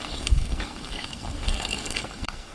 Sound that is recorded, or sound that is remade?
remade